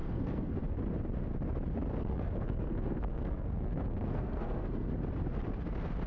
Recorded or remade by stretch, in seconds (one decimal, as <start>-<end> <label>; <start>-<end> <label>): 0.0-0.6 remade; 0.6-2.0 recorded; 2.0-4.9 remade; 4.9-6.1 recorded